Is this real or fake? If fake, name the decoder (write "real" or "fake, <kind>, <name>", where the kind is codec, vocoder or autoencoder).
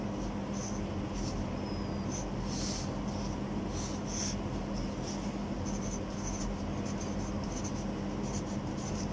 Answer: real